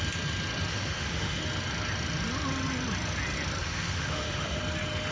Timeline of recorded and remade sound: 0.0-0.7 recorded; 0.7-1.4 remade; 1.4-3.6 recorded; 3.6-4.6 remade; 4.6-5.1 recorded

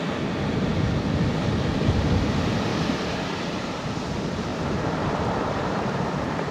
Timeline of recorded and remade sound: 0.0-2.7 recorded; 2.7-3.8 remade; 3.8-4.5 recorded; 4.5-6.0 remade; 6.0-6.5 recorded

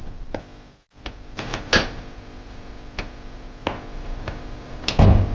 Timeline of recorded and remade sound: 0.0-5.3 recorded

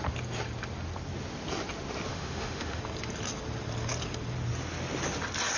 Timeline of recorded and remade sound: 0.0-2.1 recorded; 2.1-2.8 remade; 2.8-5.6 recorded

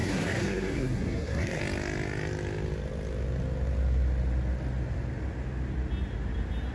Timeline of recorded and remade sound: 0.0-1.6 remade; 1.6-6.7 recorded

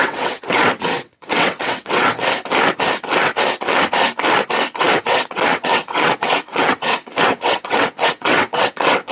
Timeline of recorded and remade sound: 0.0-2.2 remade; 2.2-4.8 recorded; 4.8-9.1 remade

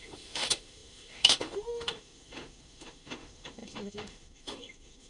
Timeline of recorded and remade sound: 0.0-5.1 remade